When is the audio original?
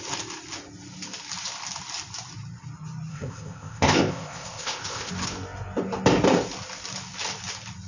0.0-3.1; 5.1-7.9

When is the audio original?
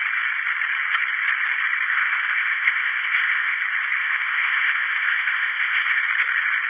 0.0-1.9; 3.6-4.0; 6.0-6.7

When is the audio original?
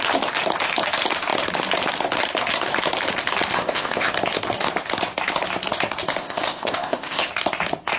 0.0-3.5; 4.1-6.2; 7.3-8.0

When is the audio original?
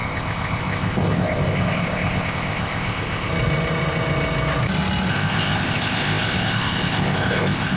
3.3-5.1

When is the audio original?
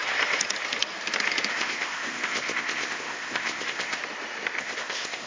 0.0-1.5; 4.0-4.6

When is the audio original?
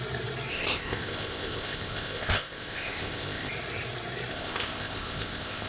0.0-0.5; 3.5-4.3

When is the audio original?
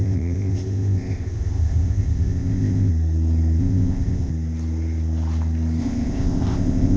2.9-3.6; 4.3-5.8